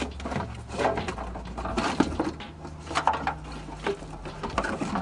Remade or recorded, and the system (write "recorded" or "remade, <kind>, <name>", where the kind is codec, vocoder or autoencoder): recorded